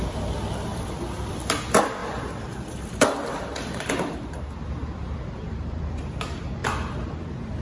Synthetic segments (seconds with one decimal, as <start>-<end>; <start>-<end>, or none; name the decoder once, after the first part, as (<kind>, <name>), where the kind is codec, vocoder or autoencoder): 2.0-3.9 (vocoder, BigVGAN v2); 4.8-6.0; 6.6-7.6